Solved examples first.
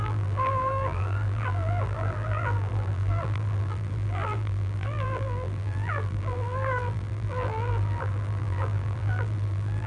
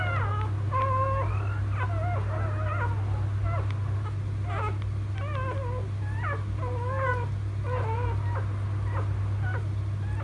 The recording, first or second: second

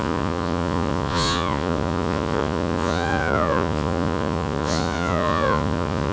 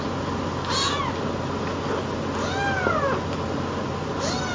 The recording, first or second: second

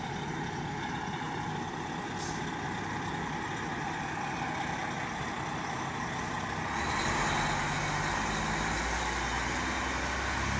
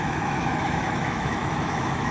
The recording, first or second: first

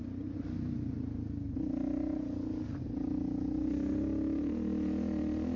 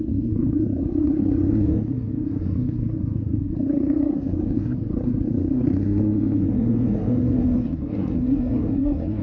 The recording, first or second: first